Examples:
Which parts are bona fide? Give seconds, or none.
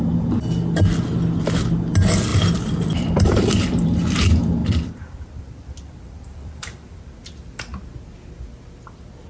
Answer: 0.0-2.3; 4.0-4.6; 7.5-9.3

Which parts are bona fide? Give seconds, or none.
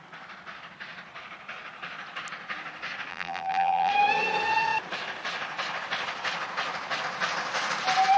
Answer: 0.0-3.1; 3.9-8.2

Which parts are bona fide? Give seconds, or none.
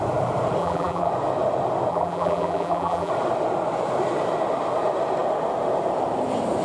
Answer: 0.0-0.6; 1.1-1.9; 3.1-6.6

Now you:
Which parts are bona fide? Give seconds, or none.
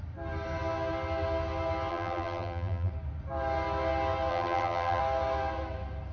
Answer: 0.0-1.9; 2.9-4.3; 5.0-6.1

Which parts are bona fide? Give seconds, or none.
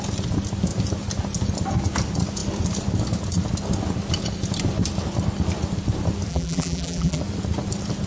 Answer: 0.0-6.3; 7.2-8.1